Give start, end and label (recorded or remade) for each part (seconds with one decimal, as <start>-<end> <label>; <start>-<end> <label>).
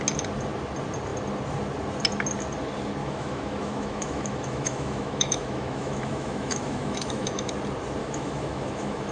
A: 0.0-3.0 recorded; 3.0-7.5 remade; 7.5-8.0 recorded; 8.0-9.1 remade